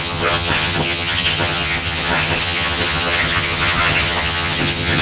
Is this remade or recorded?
remade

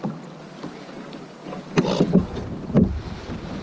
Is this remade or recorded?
recorded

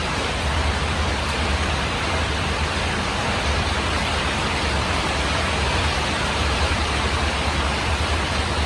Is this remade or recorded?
remade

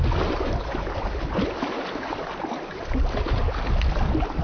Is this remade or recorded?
recorded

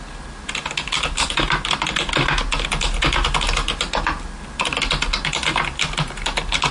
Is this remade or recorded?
recorded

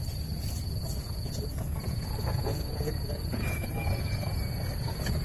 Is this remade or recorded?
remade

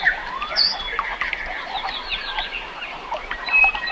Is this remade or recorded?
recorded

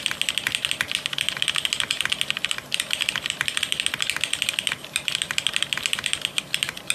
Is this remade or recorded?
recorded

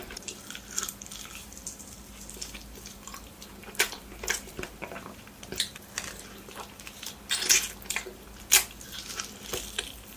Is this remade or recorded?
remade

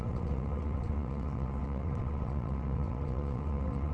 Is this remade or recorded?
remade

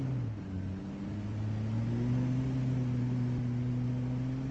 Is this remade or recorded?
recorded